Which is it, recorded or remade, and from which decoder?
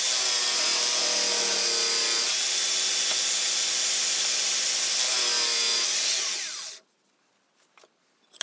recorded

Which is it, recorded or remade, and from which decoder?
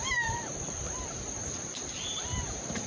remade, vocoder, BigVGAN v2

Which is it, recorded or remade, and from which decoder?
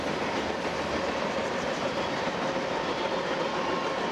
recorded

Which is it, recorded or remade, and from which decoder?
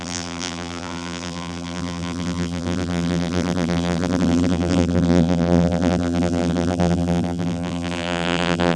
remade, vocoder, BigVGAN v2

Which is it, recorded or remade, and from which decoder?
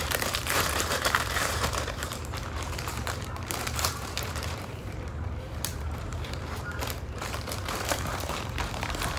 remade, vocoder, BigVGAN v2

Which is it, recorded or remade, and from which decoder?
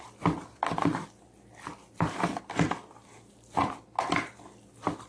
recorded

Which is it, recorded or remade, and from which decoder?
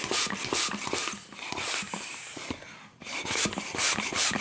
remade, vocoder, BigVGAN v2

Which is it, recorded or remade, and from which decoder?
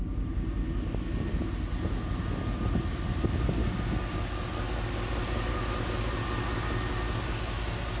recorded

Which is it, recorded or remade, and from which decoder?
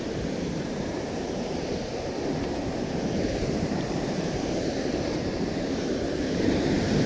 remade, vocoder, BigVGAN v2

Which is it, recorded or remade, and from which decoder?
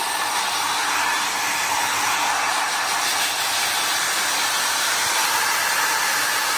remade, vocoder, BigVGAN v2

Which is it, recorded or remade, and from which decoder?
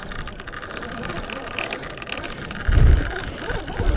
recorded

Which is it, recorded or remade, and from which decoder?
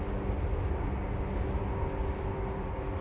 recorded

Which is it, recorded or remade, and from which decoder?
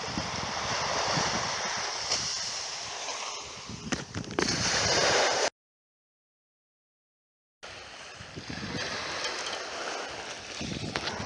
recorded